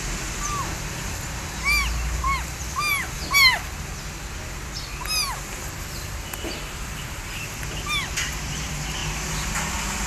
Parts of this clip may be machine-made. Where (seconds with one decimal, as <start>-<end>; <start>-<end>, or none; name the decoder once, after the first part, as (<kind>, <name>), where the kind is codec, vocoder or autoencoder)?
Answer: none